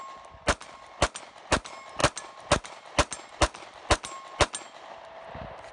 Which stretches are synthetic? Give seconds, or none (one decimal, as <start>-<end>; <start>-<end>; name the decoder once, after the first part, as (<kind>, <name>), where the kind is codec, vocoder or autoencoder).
none